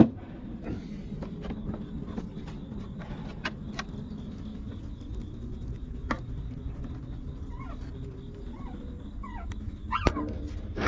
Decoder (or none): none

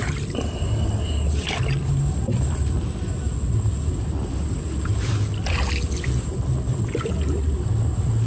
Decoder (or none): none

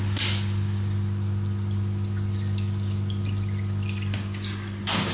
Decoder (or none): none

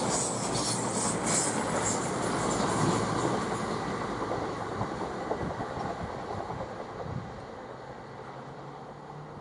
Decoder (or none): none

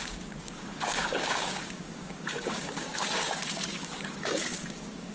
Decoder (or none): codec, DAC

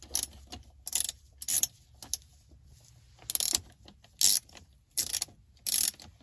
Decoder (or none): none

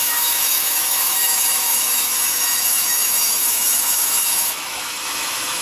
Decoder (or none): autoencoder, DAC-VAE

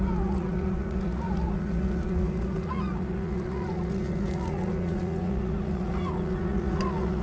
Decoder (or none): vocoder, Vocos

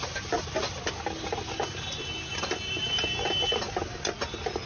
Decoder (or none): none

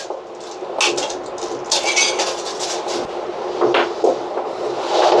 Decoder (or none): none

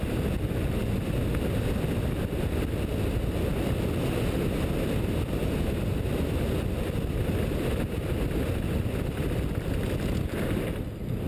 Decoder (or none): none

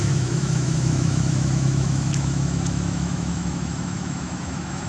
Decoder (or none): autoencoder, DAC-VAE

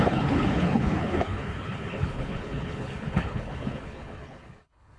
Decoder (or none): codec, HILCodec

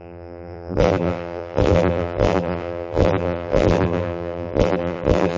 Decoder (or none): vocoder, BigVGAN v2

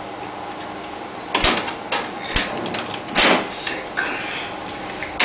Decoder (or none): none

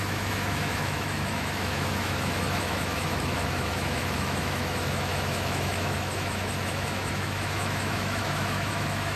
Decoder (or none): autoencoder, DAC-VAE